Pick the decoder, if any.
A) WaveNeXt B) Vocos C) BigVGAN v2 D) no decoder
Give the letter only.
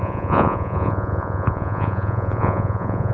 B